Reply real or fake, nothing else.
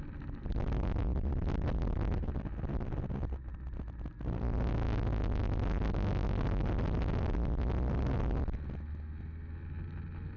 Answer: real